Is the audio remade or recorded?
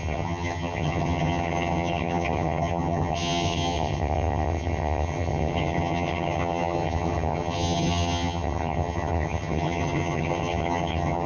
remade